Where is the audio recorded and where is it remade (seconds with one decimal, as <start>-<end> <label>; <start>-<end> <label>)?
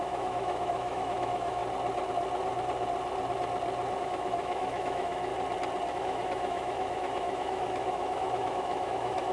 0.0-1.6 remade; 1.6-4.0 recorded; 4.0-5.3 remade; 5.3-5.9 recorded; 5.9-9.3 remade